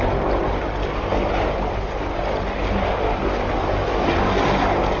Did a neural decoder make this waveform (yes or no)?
no